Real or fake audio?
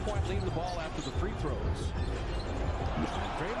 real